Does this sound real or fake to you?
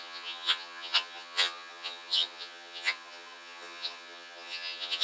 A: fake